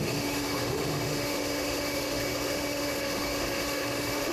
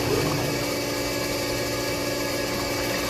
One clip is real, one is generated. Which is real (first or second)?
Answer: second